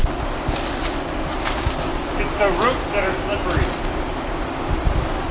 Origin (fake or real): real